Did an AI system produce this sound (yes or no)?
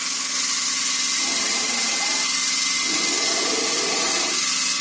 no